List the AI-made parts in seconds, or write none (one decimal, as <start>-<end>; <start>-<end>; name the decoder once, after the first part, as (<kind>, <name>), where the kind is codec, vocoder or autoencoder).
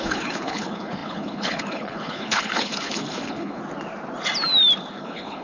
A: 0.0-3.6 (codec, HILCodec); 4.9-5.4